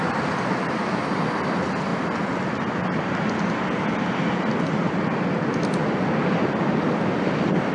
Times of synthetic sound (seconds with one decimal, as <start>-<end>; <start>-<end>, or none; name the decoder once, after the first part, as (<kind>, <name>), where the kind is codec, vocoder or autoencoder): none

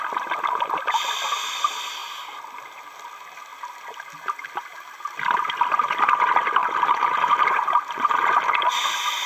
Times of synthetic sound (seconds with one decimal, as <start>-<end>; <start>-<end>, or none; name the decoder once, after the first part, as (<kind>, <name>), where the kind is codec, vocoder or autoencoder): 6.6-8.5 (vocoder, BigVGAN v2)